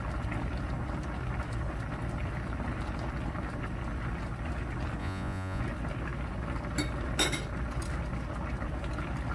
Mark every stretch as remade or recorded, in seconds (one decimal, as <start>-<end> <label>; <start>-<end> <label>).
0.0-5.0 recorded; 5.0-5.6 remade; 5.6-9.3 recorded